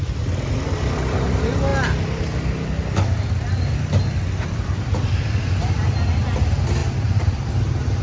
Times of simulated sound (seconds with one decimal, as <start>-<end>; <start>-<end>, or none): 6.8-7.5